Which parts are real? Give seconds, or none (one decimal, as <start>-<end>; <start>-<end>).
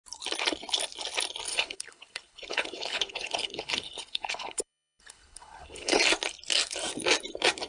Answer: 0.0-1.5; 6.0-7.7